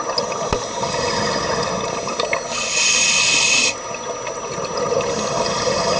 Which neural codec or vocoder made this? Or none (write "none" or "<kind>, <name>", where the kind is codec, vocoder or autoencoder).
none